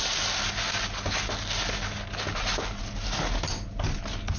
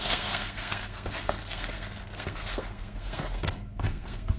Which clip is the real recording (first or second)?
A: first